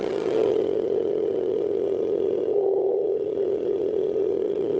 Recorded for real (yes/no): no